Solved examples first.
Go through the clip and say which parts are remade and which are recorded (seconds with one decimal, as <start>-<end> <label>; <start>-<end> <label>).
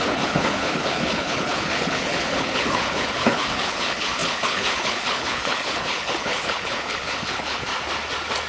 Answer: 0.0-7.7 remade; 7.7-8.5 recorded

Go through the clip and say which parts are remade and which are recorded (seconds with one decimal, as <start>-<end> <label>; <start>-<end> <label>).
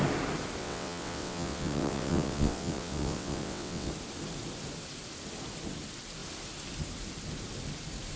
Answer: 0.0-0.6 recorded; 0.6-3.9 remade; 3.9-8.2 recorded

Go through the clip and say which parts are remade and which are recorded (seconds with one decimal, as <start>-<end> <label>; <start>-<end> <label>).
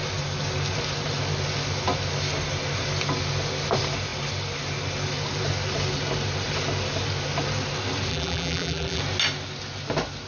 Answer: 0.0-8.1 recorded; 8.1-9.0 remade; 9.0-10.3 recorded